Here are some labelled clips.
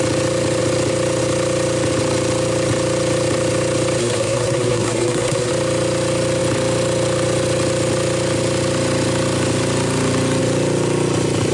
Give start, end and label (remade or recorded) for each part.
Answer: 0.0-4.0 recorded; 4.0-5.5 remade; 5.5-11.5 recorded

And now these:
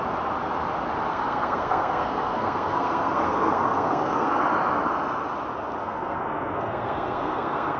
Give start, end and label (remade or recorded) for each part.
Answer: 0.0-1.1 recorded; 1.1-4.4 remade; 4.4-5.8 recorded; 5.8-7.8 remade